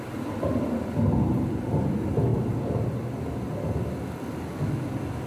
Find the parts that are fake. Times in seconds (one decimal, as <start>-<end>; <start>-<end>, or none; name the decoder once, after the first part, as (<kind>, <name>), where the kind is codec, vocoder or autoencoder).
2.3-3.1 (vocoder, BigVGAN v2)